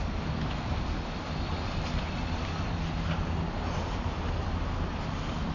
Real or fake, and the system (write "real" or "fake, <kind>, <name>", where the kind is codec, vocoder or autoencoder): real